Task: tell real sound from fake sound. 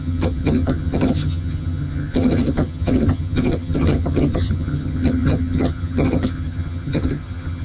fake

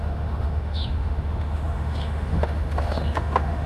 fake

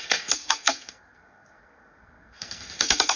fake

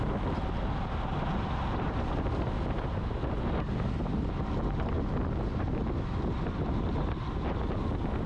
real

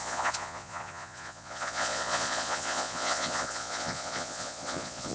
fake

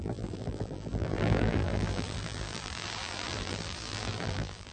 fake